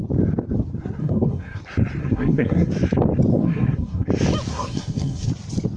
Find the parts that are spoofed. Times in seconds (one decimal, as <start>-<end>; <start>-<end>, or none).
1.0-1.6; 2.0-2.7; 3.3-4.1; 4.5-5.3